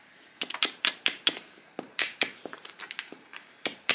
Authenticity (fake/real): fake